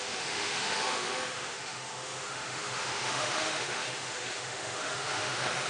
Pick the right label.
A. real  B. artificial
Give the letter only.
B